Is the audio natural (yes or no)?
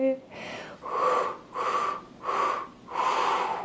yes